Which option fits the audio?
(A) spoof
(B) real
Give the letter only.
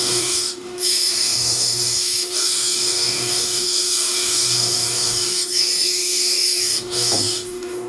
A